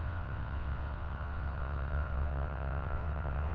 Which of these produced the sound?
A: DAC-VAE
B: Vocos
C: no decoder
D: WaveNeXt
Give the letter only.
D